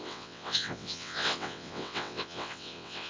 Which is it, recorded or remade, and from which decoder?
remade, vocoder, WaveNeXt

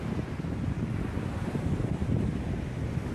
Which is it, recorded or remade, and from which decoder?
recorded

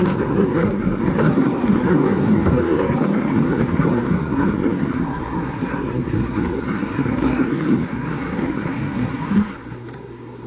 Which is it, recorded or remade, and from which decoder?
remade, codec, SNAC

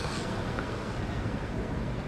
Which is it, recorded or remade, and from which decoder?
remade, codec, SNAC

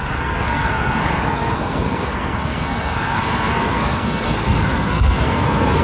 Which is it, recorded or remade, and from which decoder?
remade, codec, SNAC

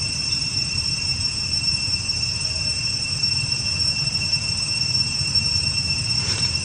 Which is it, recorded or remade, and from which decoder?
remade, vocoder, BigVGAN v2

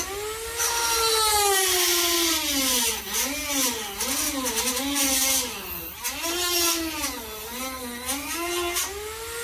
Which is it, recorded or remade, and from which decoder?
recorded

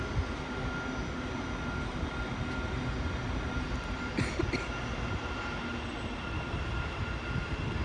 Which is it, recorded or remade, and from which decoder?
recorded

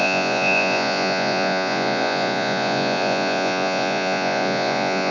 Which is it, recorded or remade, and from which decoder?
remade, vocoder, Vocos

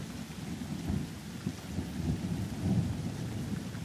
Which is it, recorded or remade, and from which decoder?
recorded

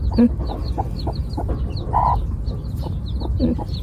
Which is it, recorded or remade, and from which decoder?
recorded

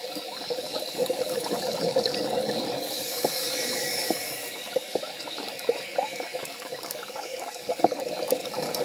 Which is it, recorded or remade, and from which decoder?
remade, codec, DAC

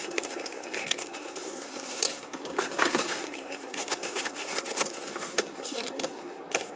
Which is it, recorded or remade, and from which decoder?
remade, codec, SNAC